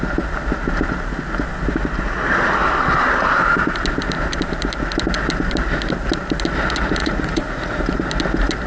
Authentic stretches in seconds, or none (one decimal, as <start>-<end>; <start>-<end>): 0.0-7.0; 7.8-8.7